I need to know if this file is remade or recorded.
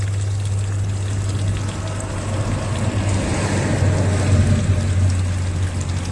recorded